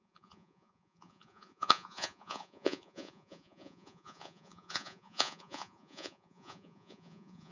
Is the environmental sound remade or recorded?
remade